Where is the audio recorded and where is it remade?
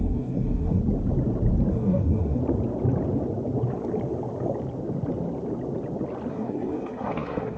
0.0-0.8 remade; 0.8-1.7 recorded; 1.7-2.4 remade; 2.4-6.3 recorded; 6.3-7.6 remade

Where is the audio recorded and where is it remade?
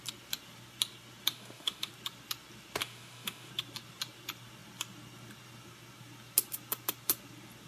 0.0-1.3 recorded; 1.3-1.9 remade; 1.9-2.8 recorded; 2.8-3.5 remade; 3.5-7.7 recorded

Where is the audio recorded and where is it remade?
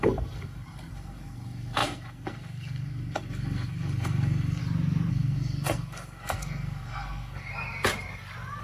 0.0-4.6 remade; 4.6-5.1 recorded; 5.1-7.5 remade; 7.5-8.6 recorded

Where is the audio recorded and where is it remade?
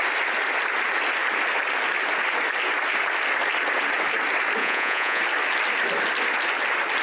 0.0-4.6 recorded; 4.6-5.2 remade; 5.2-7.0 recorded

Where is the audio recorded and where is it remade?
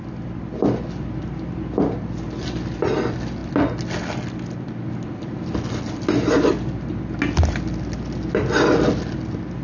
0.0-9.6 recorded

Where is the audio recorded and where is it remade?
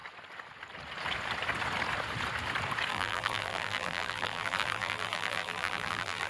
0.0-2.9 recorded; 2.9-6.3 remade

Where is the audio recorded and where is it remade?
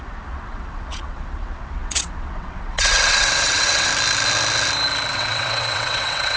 0.0-3.9 remade; 3.9-5.1 recorded; 5.1-6.4 remade